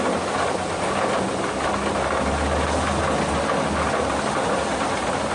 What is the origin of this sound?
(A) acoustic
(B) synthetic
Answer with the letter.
A